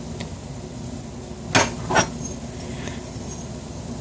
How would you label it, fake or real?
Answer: real